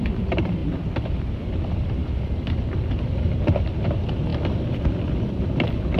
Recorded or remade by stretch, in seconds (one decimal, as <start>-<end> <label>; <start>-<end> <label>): 0.0-2.0 remade; 2.0-3.8 recorded; 3.8-6.0 remade